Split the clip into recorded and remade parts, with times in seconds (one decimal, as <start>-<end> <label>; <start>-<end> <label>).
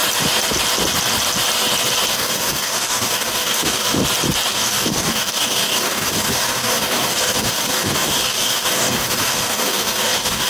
0.0-2.1 recorded; 2.1-4.0 remade; 4.0-4.5 recorded; 4.5-10.5 remade